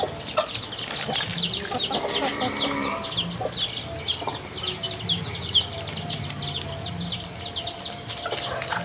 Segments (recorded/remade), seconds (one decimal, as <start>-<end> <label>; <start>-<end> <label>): 0.0-8.8 recorded